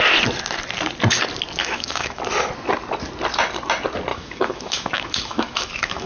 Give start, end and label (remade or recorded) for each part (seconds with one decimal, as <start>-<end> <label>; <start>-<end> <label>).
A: 0.0-1.6 recorded; 1.6-2.2 remade; 2.2-4.1 recorded; 4.1-6.1 remade